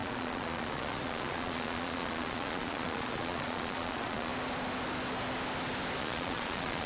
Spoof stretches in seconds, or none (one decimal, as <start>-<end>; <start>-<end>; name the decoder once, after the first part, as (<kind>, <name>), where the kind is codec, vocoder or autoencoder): 0.0-4.3 (vocoder, Vocos); 6.0-6.9